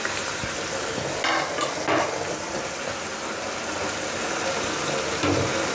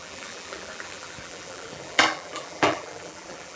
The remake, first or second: second